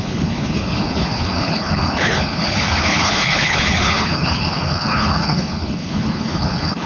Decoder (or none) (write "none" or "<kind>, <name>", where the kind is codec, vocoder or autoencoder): codec, HILCodec